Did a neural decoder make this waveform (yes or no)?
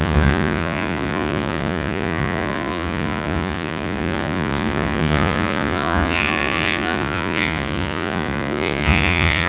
yes